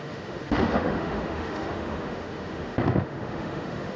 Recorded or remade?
remade